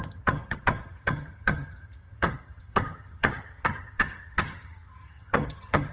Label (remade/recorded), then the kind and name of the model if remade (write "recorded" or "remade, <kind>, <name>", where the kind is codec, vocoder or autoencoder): remade, vocoder, HiFi-GAN